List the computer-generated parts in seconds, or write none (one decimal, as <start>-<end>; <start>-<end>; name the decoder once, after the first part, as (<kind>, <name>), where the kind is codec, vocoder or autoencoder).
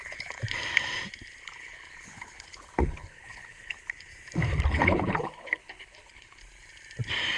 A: 0.0-0.4 (codec, HILCodec); 1.4-4.1; 4.7-6.4